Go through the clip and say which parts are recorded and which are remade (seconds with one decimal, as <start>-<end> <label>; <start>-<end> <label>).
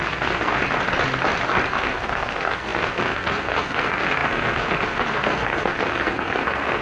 0.0-0.6 remade; 0.6-1.7 recorded; 1.7-6.8 remade